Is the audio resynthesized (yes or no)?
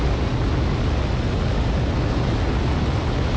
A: no